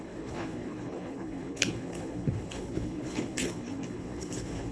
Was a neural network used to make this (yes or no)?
yes